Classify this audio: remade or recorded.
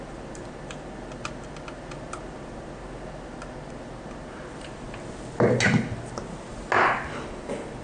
recorded